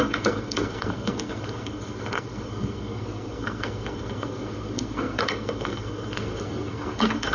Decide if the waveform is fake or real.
fake